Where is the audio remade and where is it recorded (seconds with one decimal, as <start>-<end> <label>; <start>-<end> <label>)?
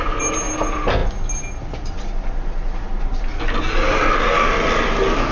0.0-5.3 recorded